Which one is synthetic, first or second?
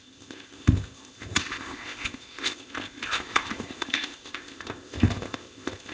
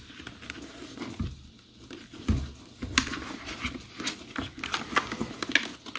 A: first